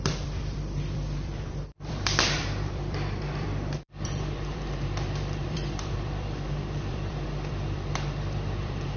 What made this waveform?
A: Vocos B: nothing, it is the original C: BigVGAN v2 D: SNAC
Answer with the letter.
C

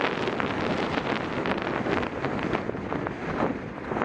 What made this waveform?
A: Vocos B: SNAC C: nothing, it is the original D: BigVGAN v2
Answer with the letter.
C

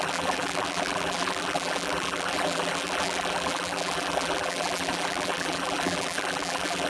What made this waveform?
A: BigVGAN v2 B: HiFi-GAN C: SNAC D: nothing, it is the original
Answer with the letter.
A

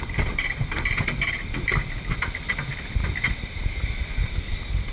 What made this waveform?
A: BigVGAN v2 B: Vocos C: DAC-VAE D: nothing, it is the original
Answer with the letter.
A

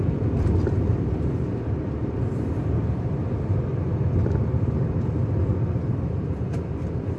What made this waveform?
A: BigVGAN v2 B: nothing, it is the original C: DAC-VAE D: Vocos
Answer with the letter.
A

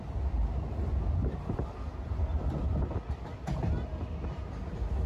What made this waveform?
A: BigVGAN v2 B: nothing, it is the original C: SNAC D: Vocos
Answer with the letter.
B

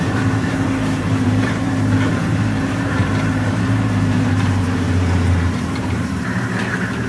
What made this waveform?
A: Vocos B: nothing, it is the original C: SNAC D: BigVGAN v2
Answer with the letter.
D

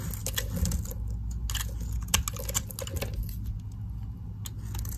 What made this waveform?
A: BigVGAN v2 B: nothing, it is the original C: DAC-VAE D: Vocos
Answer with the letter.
B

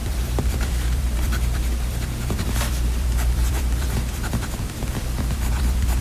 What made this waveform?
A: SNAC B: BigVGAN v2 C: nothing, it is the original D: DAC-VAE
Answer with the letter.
B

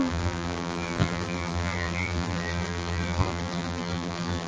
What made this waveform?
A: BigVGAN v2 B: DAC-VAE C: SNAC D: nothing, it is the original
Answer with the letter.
A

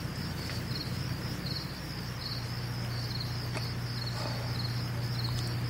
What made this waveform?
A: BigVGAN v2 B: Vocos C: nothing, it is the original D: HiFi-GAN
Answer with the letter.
C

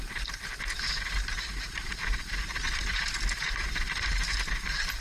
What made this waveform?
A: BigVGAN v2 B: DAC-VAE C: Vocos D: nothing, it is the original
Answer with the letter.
D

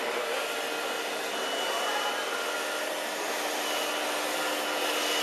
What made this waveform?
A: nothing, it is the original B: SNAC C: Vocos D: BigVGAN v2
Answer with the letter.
A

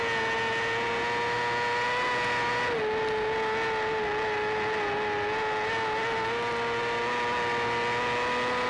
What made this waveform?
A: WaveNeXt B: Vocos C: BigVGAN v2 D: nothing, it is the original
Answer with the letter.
D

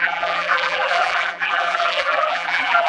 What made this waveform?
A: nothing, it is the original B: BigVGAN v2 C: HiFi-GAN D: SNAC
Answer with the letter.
B